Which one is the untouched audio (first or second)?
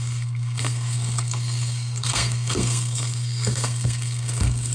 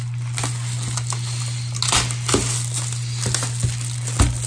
second